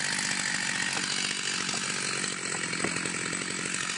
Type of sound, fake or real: real